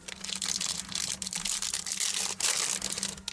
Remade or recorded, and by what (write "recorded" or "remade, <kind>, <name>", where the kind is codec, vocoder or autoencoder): recorded